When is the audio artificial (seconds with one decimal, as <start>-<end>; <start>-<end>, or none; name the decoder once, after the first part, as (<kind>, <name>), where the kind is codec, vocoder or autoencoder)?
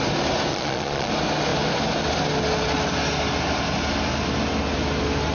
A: 0.5-1.1 (vocoder, Vocos)